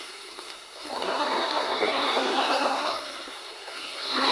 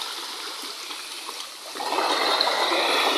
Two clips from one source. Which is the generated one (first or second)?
first